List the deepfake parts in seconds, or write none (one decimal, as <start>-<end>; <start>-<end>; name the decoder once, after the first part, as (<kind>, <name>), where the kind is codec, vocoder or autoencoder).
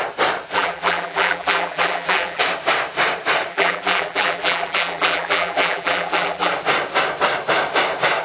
0.5-2.4 (vocoder, BigVGAN v2); 3.5-6.5